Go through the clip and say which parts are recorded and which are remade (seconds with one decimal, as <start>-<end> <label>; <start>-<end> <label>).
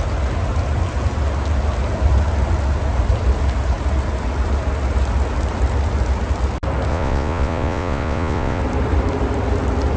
0.0-6.9 recorded; 6.9-8.6 remade; 8.6-10.0 recorded